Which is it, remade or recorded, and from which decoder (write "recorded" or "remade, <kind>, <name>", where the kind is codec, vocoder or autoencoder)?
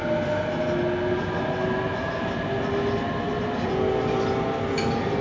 recorded